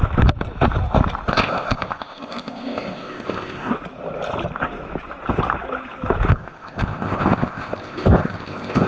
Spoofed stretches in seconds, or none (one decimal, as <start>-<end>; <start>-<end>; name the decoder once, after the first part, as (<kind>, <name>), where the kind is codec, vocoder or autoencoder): 1.3-3.7 (codec, ZipCodec); 6.3-8.9